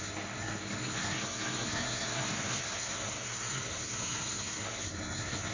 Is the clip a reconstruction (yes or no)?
yes